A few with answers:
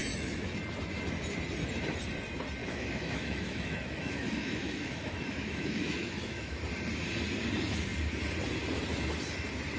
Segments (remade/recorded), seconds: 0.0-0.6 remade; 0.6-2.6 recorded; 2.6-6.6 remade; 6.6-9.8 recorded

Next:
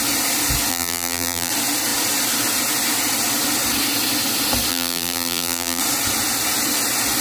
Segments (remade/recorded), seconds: 0.0-0.7 recorded; 0.7-1.5 remade; 1.5-4.7 recorded; 4.7-5.8 remade; 5.8-7.2 recorded

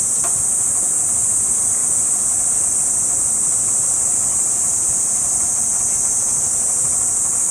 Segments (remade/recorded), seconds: 0.0-7.5 recorded

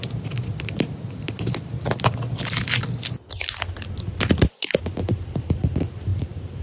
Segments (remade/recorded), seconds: 0.0-6.1 recorded; 6.1-6.6 remade